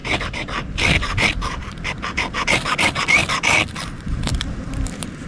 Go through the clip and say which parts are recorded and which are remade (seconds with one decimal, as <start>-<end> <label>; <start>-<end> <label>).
0.0-1.6 recorded; 1.6-5.3 remade